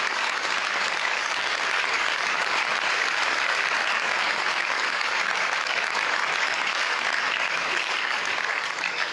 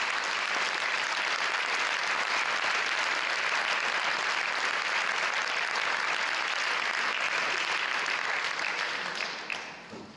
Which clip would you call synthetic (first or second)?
first